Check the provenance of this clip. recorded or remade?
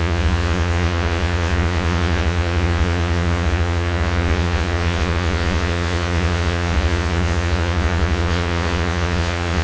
remade